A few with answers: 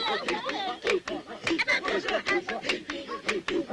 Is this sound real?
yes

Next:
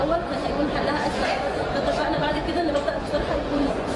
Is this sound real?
no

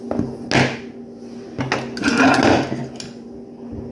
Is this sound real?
yes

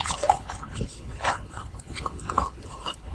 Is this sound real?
no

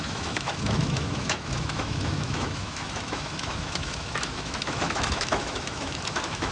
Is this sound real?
no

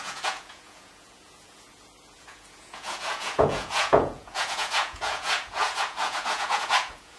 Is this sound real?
no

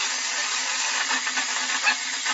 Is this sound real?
yes